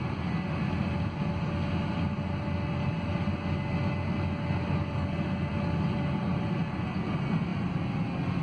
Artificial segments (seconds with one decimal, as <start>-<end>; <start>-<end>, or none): none